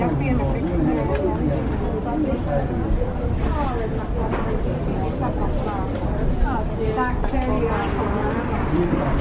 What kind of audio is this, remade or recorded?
recorded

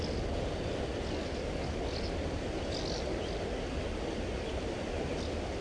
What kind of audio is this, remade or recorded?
recorded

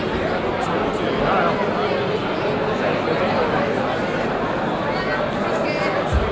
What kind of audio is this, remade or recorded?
recorded